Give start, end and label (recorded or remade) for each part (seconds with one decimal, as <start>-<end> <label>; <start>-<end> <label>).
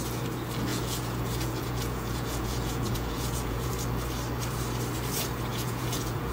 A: 0.0-0.7 recorded; 0.7-3.7 remade; 3.7-5.5 recorded; 5.5-6.3 remade